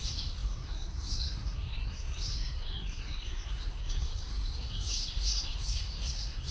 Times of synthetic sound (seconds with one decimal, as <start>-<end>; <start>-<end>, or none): 0.0-6.5